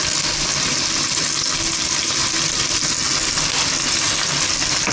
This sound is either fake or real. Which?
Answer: real